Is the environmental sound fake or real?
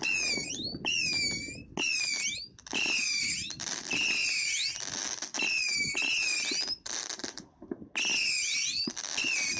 real